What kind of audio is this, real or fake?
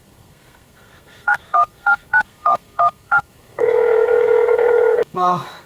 fake